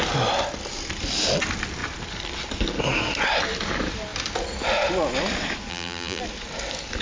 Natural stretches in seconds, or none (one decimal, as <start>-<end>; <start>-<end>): 0.0-5.7; 6.2-7.0